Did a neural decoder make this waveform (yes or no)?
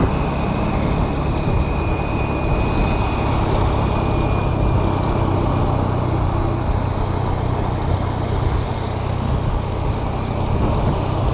no